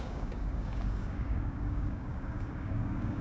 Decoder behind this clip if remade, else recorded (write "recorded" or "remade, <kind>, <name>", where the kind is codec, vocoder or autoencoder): remade, codec, DAC